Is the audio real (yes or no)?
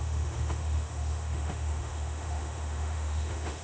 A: no